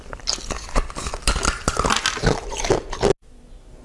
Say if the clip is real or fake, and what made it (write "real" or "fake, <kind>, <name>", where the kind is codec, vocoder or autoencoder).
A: real